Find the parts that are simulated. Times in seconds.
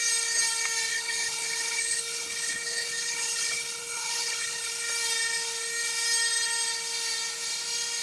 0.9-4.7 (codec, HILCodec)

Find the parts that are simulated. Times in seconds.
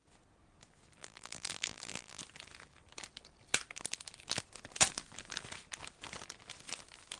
1.0-2.2 (vocoder, BigVGAN v2)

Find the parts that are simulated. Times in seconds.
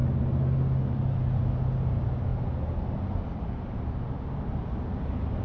none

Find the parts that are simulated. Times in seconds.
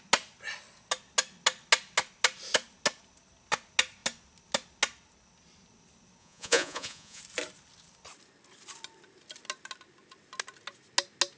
6.2-7.2 (vocoder, Vocos)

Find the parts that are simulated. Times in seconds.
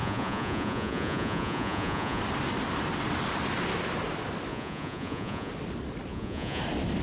0.0-2.2 (vocoder, Vocos); 4.5-5.5; 6.1-6.6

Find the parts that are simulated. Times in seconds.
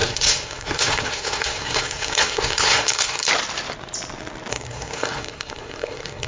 0.0-3.3 (codec, SNAC); 4.5-6.3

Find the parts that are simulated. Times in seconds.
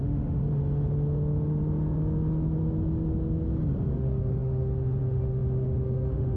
0.0-0.4 (autoencoder, DAC-VAE); 3.9-6.4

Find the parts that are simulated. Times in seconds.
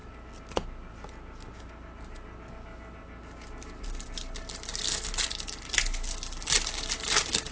none